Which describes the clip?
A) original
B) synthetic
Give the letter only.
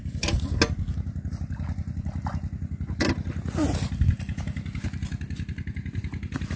A